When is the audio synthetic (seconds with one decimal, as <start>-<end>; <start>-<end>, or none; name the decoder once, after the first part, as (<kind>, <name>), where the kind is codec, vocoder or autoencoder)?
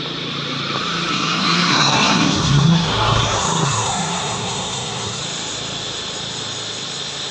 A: 1.1-5.2 (codec, SNAC)